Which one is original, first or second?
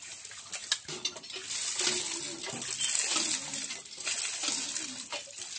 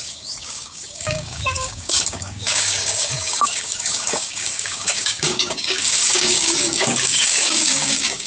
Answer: first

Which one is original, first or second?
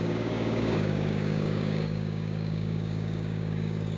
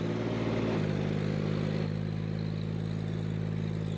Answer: second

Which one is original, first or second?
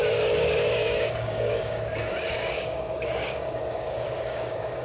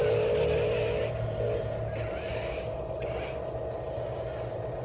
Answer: second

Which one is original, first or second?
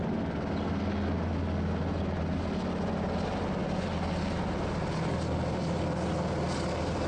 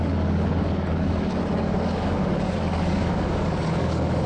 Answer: first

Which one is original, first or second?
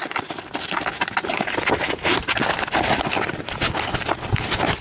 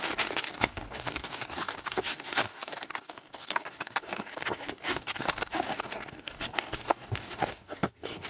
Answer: first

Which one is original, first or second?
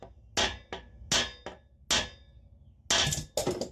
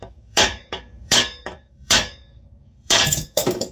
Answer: first